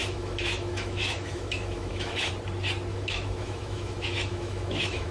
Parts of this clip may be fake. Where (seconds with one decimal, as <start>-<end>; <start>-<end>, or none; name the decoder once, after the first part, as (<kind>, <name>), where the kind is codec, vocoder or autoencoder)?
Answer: 0.0-2.3 (autoencoder, DAC-VAE); 2.9-5.1